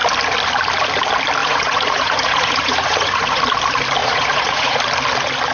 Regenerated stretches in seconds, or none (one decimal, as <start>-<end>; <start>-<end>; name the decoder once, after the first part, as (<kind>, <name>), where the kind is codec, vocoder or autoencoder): 1.4-3.4 (vocoder, Vocos); 4.0-4.8